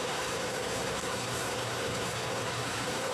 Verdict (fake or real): fake